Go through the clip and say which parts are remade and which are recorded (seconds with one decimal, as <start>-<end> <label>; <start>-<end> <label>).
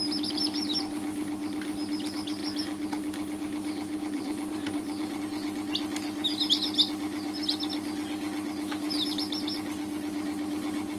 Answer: 0.0-2.4 recorded; 2.4-5.2 remade; 5.2-11.0 recorded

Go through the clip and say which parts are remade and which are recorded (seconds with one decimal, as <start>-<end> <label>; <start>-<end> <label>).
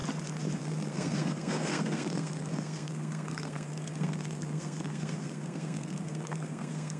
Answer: 0.0-0.6 recorded; 0.6-7.0 remade